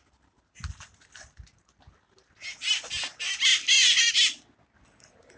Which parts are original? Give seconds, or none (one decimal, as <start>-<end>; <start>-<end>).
0.0-5.4